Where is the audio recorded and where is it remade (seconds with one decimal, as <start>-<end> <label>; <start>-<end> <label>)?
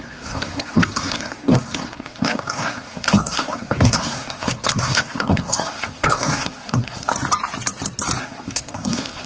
0.0-7.1 remade; 7.1-8.2 recorded; 8.2-9.3 remade